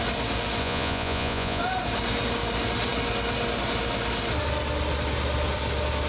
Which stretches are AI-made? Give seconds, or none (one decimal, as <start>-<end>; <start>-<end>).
0.6-1.6